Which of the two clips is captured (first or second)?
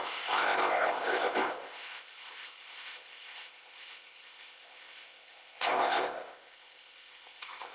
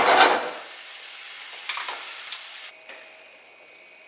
second